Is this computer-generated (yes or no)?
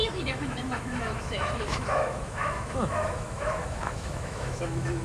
yes